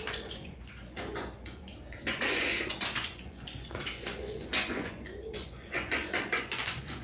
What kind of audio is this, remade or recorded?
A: remade